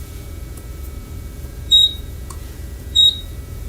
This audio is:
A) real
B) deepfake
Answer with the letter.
B